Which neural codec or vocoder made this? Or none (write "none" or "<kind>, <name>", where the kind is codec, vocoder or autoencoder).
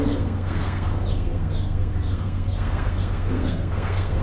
codec, SNAC